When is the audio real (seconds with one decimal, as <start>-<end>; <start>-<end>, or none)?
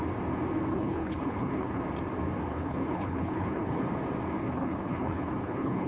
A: 0.0-0.7; 1.8-2.5; 3.8-4.4